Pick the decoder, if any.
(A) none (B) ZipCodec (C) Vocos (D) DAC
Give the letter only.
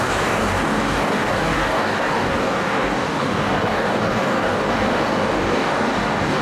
D